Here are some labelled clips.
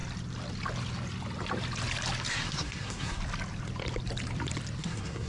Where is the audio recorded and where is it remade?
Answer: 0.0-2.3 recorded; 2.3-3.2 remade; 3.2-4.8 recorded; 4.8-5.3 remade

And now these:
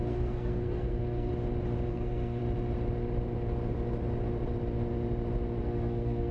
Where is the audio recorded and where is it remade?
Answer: 0.0-1.3 remade; 1.3-1.9 recorded; 1.9-2.4 remade; 2.4-5.6 recorded; 5.6-6.3 remade

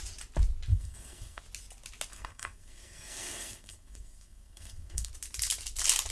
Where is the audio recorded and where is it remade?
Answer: 0.0-0.7 recorded; 0.7-1.4 remade; 1.4-2.1 recorded; 2.1-5.1 remade; 5.1-6.1 recorded

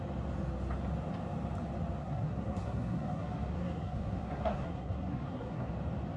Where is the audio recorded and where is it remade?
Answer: 0.0-2.0 recorded; 2.0-5.7 remade; 5.7-6.2 recorded